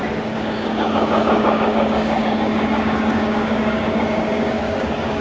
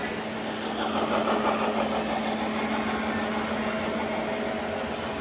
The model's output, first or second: first